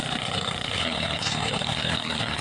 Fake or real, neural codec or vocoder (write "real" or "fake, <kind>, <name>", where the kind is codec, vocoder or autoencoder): fake, codec, SNAC